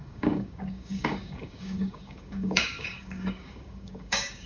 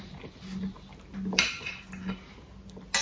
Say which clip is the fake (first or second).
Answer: first